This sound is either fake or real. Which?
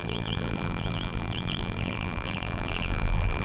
fake